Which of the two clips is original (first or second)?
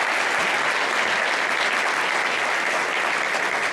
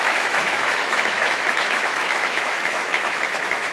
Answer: first